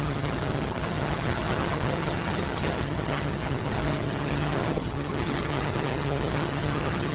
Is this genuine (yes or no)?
no